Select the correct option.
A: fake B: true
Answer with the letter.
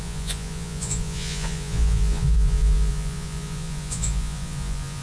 A